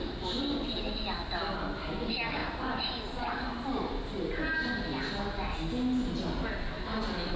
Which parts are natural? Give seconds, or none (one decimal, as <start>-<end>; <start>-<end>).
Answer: 0.0-7.4